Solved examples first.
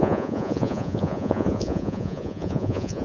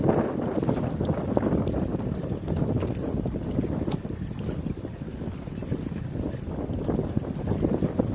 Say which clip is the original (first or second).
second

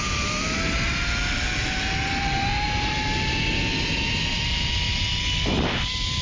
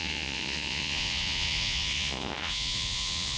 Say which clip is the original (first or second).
first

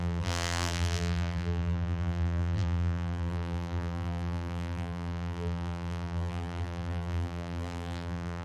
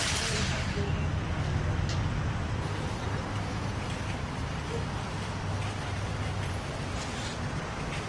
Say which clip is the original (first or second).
second